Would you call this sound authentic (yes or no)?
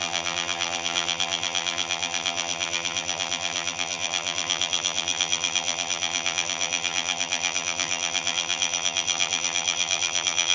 no